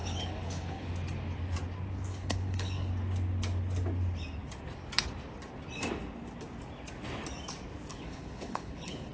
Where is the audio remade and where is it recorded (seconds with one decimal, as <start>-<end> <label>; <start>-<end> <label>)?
0.0-0.9 remade; 0.9-2.1 recorded; 2.1-2.9 remade; 2.9-7.9 recorded; 7.9-9.1 remade